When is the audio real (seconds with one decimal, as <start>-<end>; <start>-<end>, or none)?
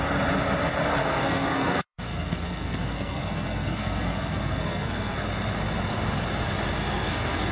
0.0-1.0; 5.2-6.8